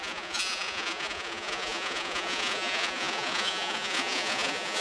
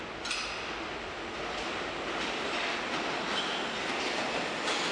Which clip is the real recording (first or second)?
second